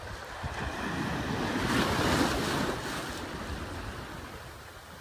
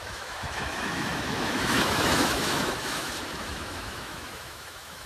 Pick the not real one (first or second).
second